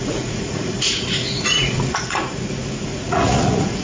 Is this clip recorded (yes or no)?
no